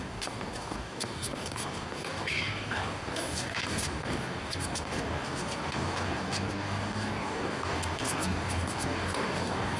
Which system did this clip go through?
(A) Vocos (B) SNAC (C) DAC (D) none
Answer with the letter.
C